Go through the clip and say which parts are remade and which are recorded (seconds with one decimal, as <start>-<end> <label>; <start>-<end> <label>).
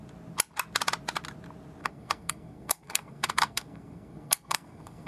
0.0-1.8 recorded; 1.8-5.1 remade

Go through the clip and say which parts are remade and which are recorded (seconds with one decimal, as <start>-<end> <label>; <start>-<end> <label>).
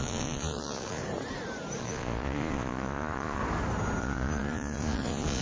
0.0-1.0 remade; 1.0-1.8 recorded; 1.8-3.4 remade; 3.4-4.0 recorded; 4.0-5.4 remade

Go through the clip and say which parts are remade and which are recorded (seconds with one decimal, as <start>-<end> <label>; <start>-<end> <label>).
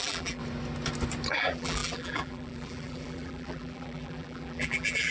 0.0-0.4 remade; 0.4-1.3 recorded; 1.3-5.1 remade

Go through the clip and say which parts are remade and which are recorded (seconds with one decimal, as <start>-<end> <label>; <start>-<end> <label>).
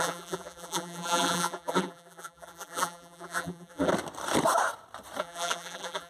0.0-3.9 remade; 3.9-5.2 recorded; 5.2-6.1 remade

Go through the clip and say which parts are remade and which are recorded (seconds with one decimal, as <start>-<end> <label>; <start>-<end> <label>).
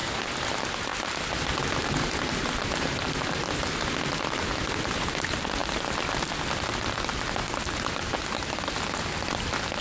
0.0-0.5 remade; 0.5-9.8 recorded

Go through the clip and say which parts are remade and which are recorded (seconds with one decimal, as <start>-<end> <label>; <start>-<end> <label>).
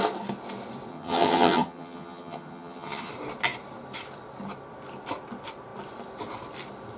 0.0-0.9 recorded; 0.9-3.1 remade; 3.1-7.0 recorded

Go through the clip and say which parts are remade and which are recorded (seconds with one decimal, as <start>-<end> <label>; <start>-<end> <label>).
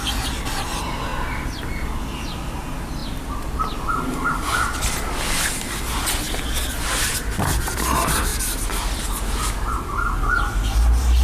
0.0-11.2 recorded